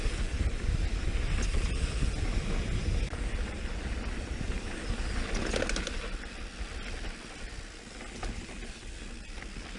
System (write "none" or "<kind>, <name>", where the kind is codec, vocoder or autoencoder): none